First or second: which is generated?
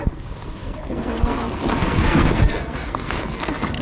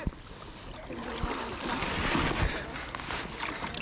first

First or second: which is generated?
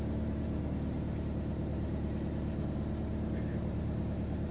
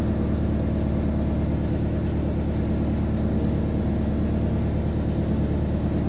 first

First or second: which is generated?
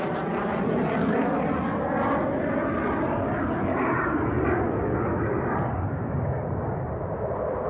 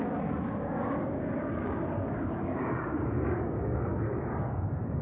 second